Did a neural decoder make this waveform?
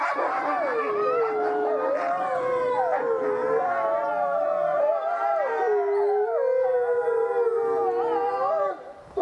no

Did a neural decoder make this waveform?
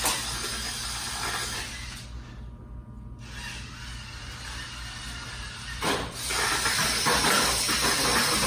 no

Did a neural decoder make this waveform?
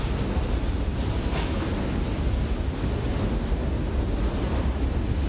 no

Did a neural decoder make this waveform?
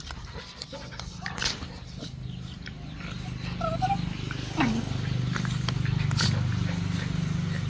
no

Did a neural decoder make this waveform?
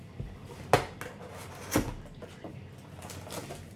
no